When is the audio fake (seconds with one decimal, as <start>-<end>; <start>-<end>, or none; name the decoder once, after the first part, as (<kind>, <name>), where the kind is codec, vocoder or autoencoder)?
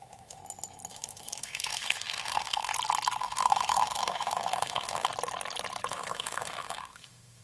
0.0-0.4 (autoencoder, DAC-VAE); 0.9-2.7; 3.2-5.1; 5.9-7.4